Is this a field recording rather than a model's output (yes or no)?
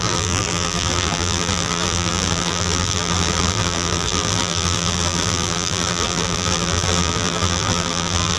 no